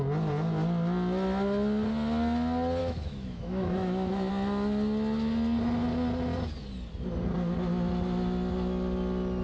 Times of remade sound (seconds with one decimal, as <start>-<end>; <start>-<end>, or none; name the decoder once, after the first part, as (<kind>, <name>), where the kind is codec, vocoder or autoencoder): 2.8-4.3 (autoencoder, DAC-VAE)